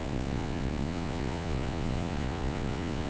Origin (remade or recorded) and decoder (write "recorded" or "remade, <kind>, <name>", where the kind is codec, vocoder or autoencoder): remade, vocoder, Vocos